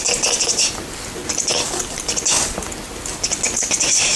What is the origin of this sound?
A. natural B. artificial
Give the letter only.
A